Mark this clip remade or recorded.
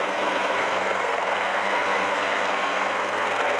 remade